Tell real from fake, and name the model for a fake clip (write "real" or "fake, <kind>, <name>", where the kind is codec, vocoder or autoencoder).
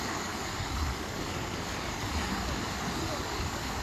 fake, codec, DAC